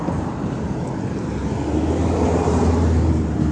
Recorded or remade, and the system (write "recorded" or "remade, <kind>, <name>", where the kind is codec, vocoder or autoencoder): recorded